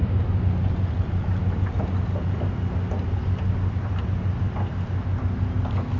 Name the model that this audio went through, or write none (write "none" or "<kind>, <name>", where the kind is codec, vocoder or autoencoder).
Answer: none